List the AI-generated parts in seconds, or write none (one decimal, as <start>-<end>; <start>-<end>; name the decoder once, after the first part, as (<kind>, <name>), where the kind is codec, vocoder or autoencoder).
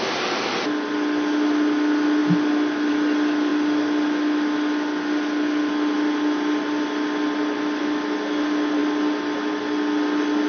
none